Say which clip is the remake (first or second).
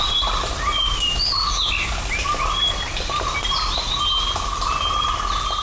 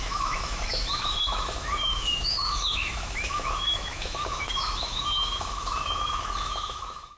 second